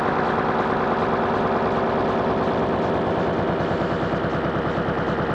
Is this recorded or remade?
recorded